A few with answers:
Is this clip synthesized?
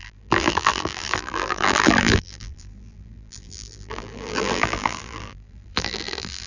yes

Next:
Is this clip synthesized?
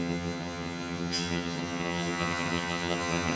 yes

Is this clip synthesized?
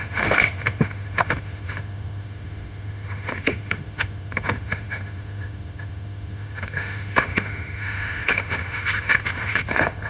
yes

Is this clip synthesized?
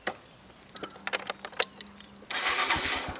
no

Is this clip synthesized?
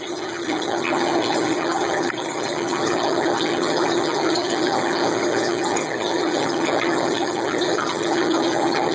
yes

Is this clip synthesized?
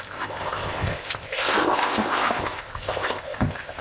yes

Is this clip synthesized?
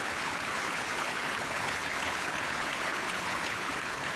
yes